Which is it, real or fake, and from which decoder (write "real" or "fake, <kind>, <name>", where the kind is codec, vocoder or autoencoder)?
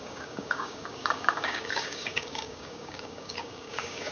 fake, codec, DAC